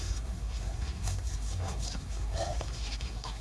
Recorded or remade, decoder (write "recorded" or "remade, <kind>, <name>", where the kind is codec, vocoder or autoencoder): remade, codec, SNAC